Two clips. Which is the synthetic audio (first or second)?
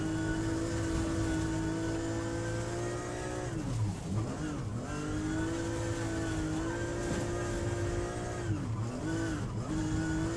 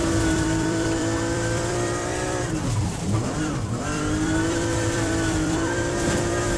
second